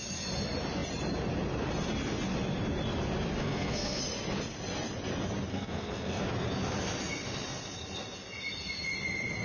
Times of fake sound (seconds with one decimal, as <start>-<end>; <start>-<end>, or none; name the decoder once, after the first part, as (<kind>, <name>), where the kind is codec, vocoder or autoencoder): 3.4-4.0 (codec, SNAC); 5.5-6.2